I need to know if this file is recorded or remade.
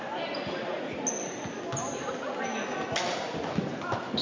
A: recorded